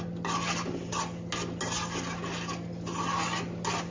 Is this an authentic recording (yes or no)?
yes